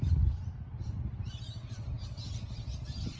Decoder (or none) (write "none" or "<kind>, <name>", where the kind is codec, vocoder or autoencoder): none